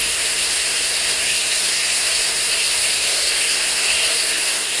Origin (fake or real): fake